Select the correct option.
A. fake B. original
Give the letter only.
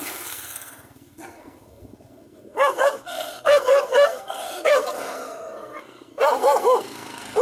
A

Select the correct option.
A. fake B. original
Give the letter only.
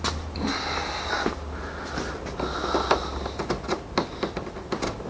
B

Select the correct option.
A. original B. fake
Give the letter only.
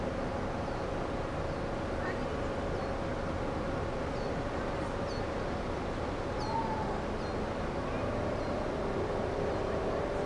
A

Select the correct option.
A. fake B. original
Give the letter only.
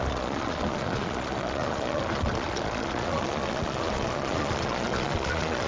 A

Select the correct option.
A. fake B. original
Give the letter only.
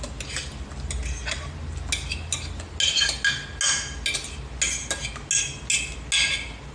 B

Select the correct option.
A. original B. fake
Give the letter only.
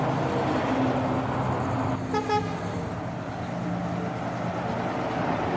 A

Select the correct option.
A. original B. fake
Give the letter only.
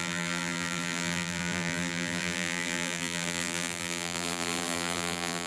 B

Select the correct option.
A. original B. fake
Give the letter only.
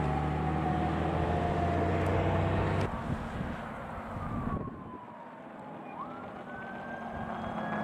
A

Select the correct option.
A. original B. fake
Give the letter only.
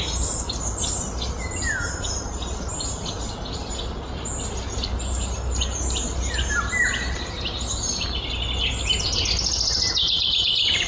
A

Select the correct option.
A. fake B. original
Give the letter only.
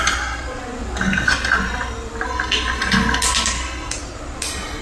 B